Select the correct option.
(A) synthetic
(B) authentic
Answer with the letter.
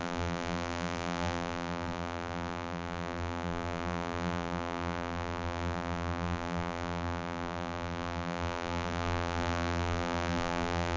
A